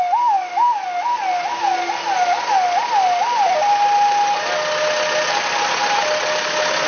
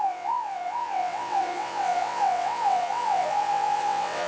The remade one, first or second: second